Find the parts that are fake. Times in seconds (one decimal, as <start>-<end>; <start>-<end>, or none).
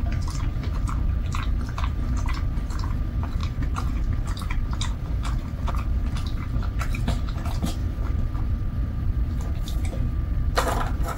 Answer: 0.0-11.2